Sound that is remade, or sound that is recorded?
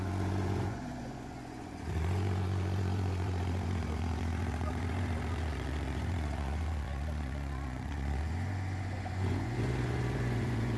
remade